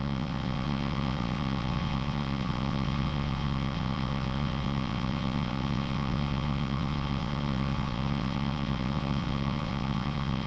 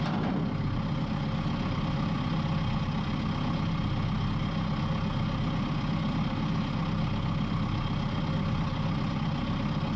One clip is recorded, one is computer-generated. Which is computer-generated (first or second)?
first